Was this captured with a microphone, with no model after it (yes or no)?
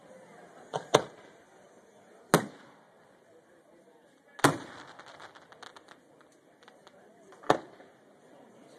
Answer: yes